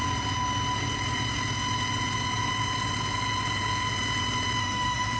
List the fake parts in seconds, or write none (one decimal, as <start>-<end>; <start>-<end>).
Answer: 4.6-5.2